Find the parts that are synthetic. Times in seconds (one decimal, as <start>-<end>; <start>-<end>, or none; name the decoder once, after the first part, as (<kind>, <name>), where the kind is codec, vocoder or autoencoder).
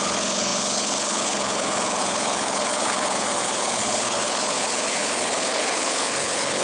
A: 0.0-6.6 (codec, HILCodec)